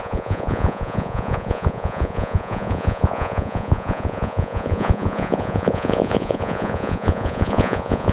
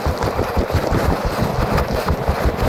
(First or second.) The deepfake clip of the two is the first